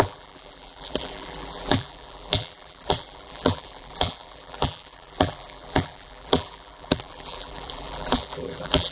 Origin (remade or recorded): remade